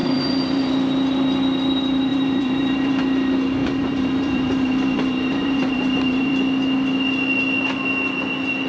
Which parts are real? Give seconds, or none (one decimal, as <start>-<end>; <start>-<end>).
0.7-2.1; 2.9-3.6; 6.3-8.7